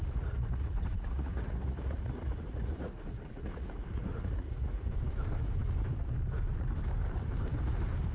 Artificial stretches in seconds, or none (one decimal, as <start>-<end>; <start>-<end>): 0.0-4.9